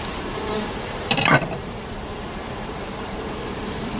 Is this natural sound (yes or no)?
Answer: no